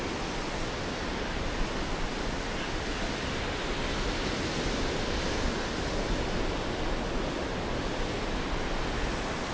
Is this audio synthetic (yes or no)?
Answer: no